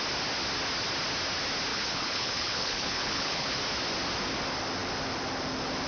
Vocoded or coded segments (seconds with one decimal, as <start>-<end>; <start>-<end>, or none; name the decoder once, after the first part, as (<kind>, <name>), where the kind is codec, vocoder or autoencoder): 1.7-3.6 (codec, HILCodec)